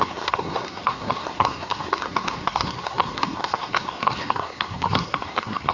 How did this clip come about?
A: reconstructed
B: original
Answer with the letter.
A